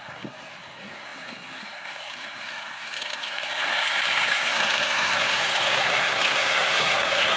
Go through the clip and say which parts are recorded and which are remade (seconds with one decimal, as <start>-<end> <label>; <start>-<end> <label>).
0.0-7.4 remade